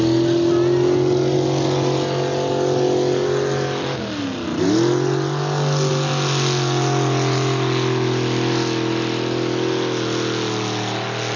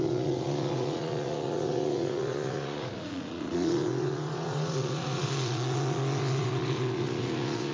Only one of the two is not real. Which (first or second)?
second